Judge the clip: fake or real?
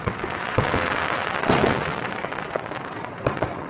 fake